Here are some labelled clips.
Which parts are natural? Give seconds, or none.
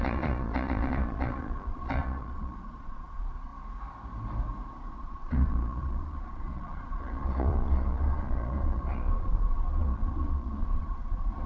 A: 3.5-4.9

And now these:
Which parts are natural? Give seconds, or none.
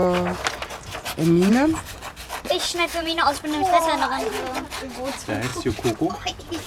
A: 0.0-2.9; 3.8-6.7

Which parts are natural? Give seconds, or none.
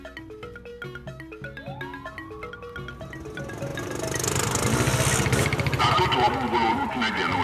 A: 0.0-7.4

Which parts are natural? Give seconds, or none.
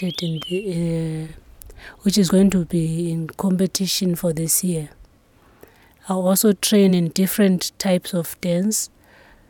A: 0.0-8.3; 8.9-9.5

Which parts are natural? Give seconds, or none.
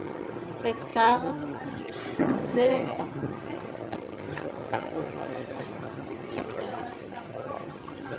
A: none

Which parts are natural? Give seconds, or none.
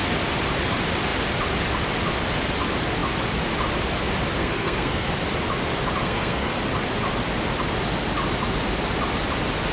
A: 0.0-4.4; 5.1-6.0; 6.5-9.7